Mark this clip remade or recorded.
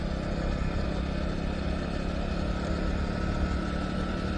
recorded